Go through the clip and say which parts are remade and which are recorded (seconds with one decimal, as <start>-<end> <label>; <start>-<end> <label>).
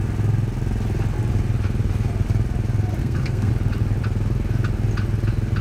0.0-3.0 recorded; 3.0-3.5 remade; 3.5-5.6 recorded